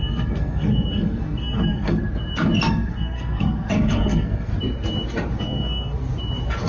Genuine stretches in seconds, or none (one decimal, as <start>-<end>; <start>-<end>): 2.0-2.7; 4.5-5.4; 6.0-6.7